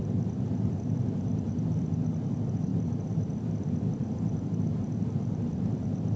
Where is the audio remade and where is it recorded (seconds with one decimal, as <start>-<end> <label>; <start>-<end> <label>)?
0.0-6.2 recorded